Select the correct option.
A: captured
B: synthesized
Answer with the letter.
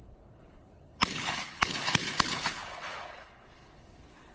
B